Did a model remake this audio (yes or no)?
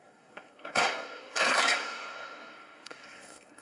yes